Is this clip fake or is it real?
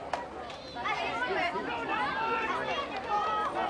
real